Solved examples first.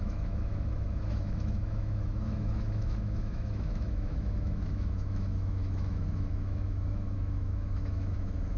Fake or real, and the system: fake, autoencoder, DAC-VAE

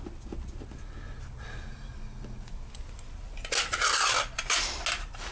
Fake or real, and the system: real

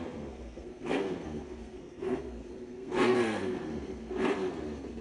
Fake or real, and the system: fake, codec, SNAC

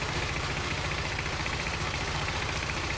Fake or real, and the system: fake, vocoder, BigVGAN v2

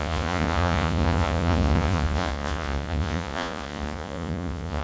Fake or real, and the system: fake, vocoder, Vocos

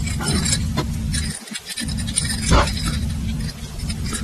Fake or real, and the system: real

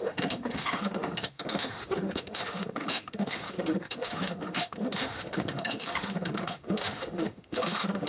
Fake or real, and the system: fake, autoencoder, DAC-VAE